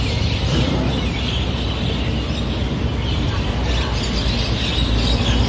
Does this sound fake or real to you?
real